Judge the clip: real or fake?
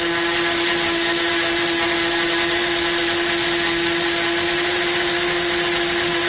real